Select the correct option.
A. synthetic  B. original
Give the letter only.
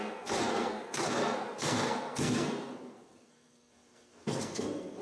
A